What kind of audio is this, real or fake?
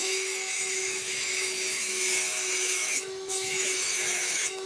fake